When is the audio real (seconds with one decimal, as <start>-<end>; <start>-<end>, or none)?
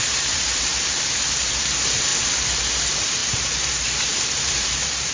0.7-1.4; 2.1-2.8